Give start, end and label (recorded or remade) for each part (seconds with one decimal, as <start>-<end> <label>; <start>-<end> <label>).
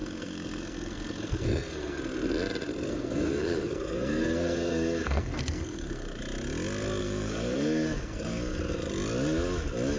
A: 0.0-2.0 remade; 2.0-2.9 recorded; 2.9-6.2 remade; 6.2-7.0 recorded; 7.0-8.6 remade; 8.6-10.0 recorded